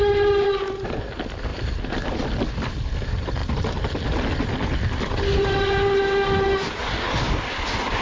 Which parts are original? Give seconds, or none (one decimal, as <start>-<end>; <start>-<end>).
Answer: 0.0-8.0